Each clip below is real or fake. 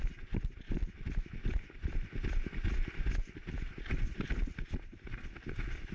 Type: real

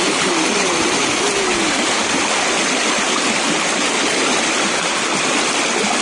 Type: real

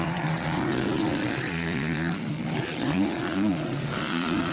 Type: fake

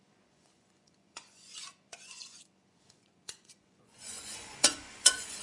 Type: fake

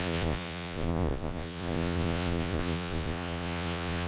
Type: fake